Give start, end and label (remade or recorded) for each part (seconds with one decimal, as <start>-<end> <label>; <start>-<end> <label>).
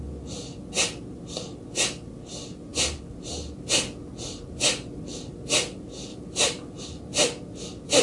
0.0-6.1 recorded; 6.1-6.8 remade; 6.8-8.0 recorded